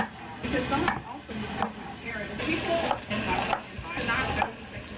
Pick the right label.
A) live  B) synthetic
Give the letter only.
A